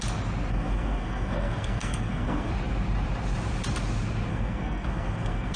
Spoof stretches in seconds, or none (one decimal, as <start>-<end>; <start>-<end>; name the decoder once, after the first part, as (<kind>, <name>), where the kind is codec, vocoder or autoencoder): 0.5-2.5 (codec, SNAC); 4.3-5.6